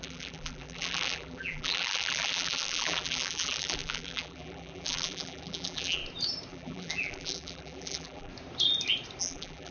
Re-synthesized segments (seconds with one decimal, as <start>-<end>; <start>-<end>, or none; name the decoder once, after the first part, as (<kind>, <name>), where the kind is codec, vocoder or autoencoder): 0.0-6.0 (vocoder, BigVGAN v2); 6.5-8.3; 9.2-9.7